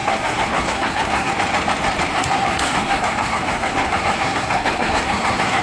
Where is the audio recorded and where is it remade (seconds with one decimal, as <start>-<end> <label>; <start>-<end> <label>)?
0.0-1.3 remade; 1.3-2.1 recorded; 2.1-5.6 remade